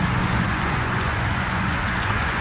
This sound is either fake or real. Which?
fake